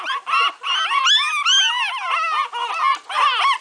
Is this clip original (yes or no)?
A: yes